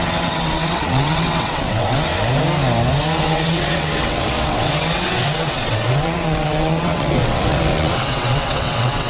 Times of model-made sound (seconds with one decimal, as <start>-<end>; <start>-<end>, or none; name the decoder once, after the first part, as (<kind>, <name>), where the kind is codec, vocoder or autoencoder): 0.0-2.1 (vocoder, WaveNeXt); 3.2-9.1